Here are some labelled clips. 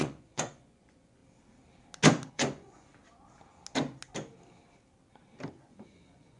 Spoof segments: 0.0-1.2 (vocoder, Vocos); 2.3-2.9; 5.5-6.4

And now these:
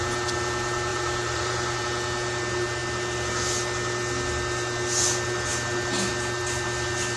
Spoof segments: 0.9-1.8 (vocoder, BigVGAN v2)

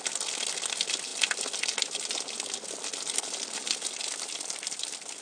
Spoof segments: none